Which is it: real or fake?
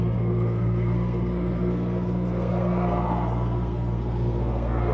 fake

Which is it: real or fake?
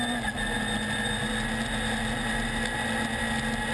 real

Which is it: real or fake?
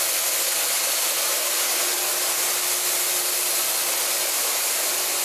real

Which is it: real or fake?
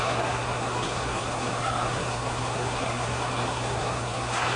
fake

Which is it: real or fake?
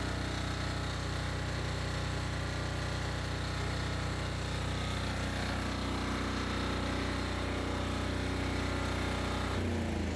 real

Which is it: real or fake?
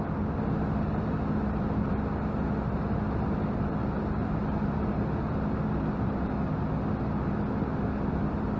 real